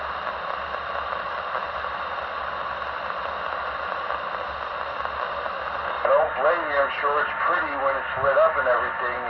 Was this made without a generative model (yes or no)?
yes